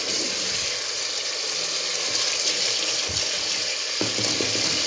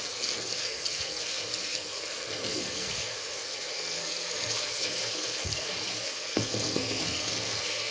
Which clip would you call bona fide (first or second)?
first